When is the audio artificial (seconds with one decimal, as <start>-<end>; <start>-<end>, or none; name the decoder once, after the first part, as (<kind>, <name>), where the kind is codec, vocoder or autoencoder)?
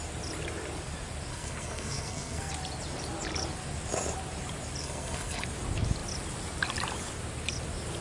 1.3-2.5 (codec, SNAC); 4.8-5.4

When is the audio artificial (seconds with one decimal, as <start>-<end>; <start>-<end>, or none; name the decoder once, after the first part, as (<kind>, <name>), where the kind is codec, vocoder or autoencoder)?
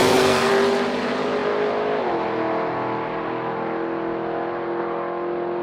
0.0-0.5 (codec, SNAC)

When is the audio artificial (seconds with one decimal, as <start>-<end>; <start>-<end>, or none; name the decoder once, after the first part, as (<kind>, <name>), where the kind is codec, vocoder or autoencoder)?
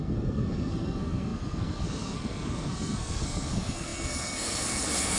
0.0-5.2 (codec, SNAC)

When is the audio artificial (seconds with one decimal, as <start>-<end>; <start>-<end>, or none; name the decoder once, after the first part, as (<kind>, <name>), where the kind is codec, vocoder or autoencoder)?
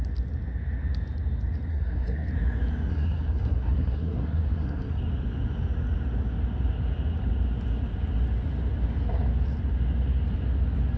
1.7-2.3 (codec, SNAC); 2.9-5.0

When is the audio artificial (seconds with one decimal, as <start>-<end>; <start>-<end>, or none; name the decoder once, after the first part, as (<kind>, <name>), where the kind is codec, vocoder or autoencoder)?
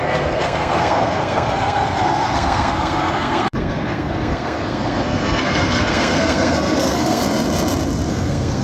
0.0-7.2 (codec, SNAC); 8.1-8.6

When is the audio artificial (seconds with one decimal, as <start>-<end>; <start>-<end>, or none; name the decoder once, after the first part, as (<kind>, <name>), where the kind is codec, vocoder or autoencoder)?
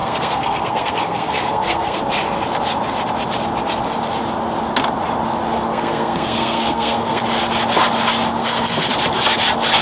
0.0-2.0 (codec, SNAC); 5.7-7.2; 8.4-8.9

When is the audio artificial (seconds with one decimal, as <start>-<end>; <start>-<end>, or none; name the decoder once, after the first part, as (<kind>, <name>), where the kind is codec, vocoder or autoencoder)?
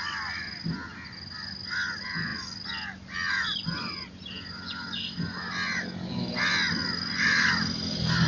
none